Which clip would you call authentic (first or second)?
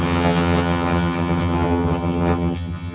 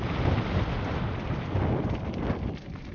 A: second